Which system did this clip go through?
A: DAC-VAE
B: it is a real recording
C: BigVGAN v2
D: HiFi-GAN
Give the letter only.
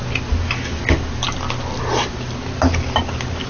B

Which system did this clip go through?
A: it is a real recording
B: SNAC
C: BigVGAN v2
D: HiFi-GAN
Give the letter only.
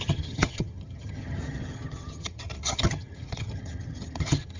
D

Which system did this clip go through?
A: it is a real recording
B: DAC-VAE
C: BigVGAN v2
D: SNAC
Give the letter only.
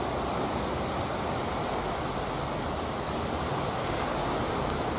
A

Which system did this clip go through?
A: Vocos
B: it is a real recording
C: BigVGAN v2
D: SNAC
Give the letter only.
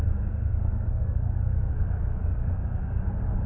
D